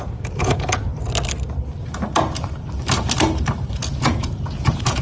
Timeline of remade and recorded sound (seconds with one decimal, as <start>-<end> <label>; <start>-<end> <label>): 0.0-0.9 remade; 0.9-3.9 recorded; 3.9-5.0 remade